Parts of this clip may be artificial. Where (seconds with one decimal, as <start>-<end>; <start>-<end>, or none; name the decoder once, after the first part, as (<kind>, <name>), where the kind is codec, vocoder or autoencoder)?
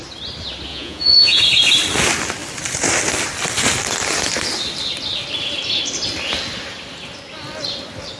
0.7-1.4 (vocoder, Vocos)